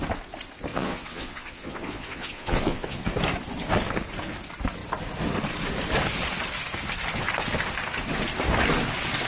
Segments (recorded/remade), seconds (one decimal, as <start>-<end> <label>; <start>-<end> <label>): 0.0-0.7 recorded; 0.7-3.1 remade; 3.1-9.3 recorded